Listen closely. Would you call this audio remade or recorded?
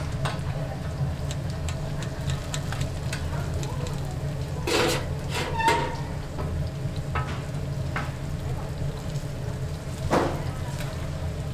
recorded